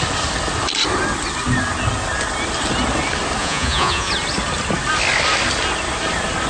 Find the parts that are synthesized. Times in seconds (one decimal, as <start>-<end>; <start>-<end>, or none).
3.4-4.1